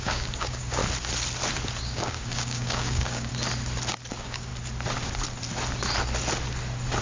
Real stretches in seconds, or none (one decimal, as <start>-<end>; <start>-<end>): 0.8-1.8; 3.3-4.1; 4.5-7.0